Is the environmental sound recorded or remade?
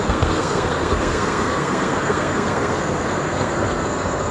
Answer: remade